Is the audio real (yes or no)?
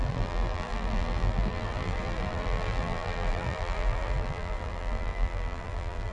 no